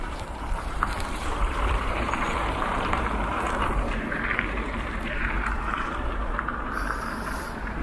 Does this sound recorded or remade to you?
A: remade